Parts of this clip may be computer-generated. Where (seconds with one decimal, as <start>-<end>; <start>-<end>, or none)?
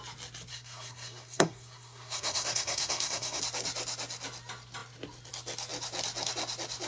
0.5-3.4